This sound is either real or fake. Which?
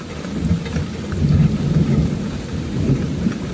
real